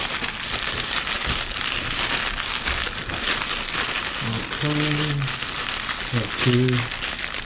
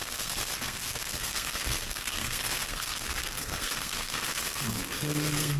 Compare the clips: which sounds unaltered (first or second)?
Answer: first